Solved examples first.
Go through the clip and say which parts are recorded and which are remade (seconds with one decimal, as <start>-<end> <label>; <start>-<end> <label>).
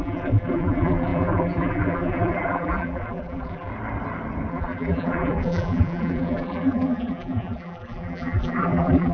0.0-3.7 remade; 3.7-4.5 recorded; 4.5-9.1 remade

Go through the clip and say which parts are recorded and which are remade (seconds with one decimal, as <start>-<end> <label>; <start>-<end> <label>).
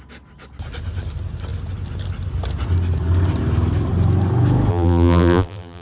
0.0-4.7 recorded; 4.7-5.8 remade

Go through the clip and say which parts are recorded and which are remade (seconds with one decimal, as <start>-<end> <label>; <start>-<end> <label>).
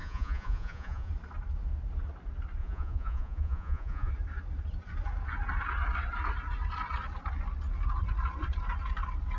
0.0-1.1 remade; 1.1-2.6 recorded; 2.6-4.1 remade; 4.1-9.4 recorded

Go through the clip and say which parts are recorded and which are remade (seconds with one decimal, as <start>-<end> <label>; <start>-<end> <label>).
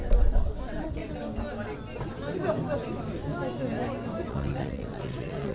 0.0-1.0 remade; 1.0-4.3 recorded; 4.3-5.5 remade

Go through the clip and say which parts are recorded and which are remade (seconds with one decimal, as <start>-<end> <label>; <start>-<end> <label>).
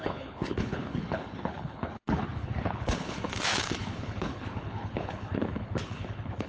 0.0-6.5 remade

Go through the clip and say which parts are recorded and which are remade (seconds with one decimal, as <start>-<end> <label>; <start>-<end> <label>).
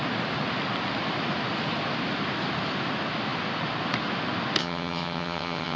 0.0-4.6 recorded; 4.6-5.8 remade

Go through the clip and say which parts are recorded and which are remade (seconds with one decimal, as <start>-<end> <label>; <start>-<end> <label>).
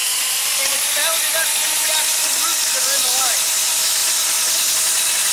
0.0-5.3 recorded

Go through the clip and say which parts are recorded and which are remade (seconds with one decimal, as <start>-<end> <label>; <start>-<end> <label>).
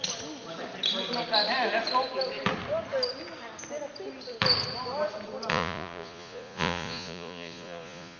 0.0-5.5 recorded; 5.5-8.2 remade